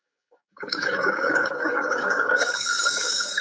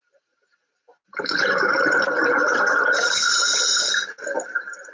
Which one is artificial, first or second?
first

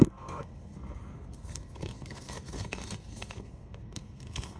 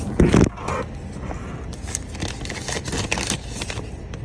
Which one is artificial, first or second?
first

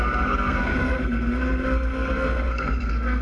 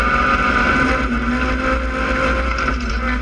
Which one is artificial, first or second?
first